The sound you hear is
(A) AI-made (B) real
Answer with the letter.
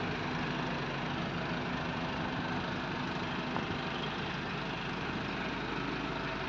B